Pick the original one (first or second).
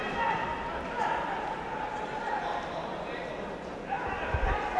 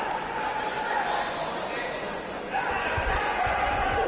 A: first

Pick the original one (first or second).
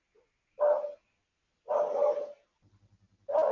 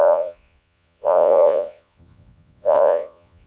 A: first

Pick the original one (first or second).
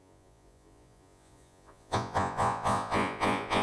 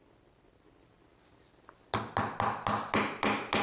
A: second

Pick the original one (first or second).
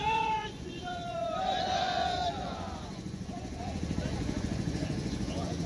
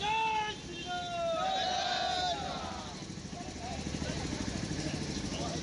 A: second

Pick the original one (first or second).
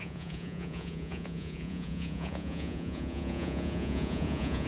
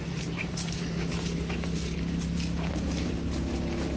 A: second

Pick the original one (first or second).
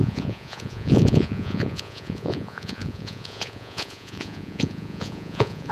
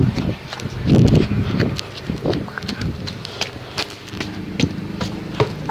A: second